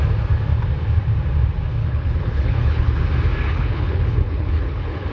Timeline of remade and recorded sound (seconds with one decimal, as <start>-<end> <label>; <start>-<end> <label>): 0.0-1.8 recorded; 1.8-3.0 remade; 3.0-3.5 recorded; 3.5-5.1 remade